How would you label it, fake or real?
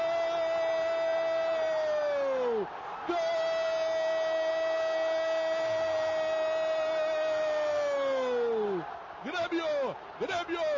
real